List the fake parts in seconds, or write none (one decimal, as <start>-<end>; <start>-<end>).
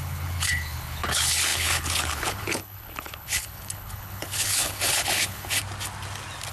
0.0-5.6